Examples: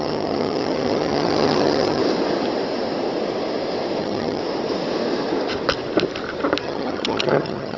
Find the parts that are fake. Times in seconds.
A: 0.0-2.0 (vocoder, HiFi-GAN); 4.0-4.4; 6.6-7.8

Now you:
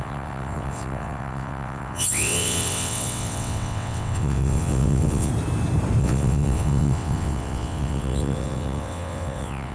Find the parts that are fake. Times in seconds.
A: 0.0-5.3 (vocoder, WaveNeXt); 6.0-9.7

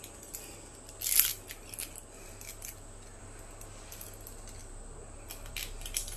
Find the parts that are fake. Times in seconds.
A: none

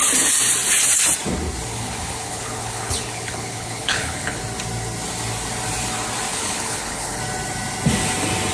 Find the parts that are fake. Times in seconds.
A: 1.7-4.4 (codec, HILCodec); 6.3-7.2

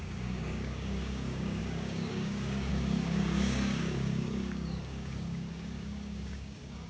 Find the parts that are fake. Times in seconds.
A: 0.0-6.9 (codec, DAC)

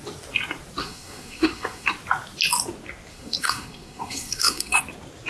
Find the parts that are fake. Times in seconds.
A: 0.8-1.9 (codec, SNAC); 3.1-4.8